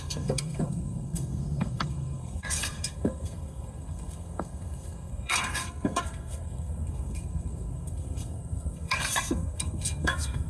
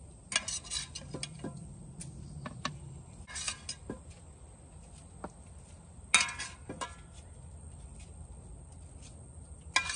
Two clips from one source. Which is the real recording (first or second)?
second